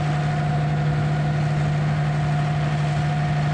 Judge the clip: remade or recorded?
recorded